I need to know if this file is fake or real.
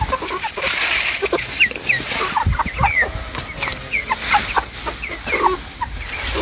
real